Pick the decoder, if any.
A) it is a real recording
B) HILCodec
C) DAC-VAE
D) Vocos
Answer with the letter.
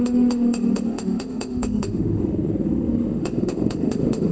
C